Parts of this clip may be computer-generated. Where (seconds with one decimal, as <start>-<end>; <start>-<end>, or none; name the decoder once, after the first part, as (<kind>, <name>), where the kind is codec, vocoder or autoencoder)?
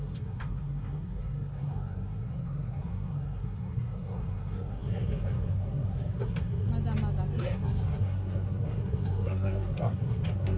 0.0-6.7 (codec, SNAC); 7.4-10.6